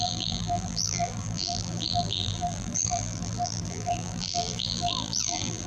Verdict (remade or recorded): remade